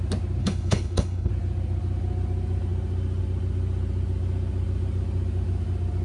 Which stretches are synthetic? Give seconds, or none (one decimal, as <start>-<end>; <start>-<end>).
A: 0.4-1.3